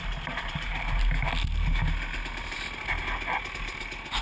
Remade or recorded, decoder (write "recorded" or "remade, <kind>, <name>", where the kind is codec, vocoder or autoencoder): recorded